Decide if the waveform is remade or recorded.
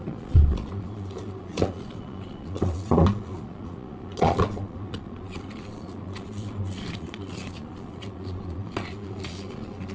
remade